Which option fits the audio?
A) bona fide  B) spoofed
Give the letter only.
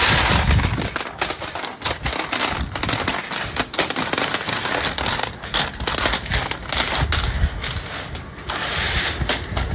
A